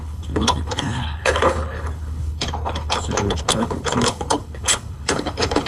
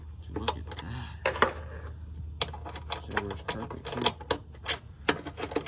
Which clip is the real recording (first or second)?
second